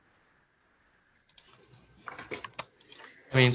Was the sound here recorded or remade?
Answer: recorded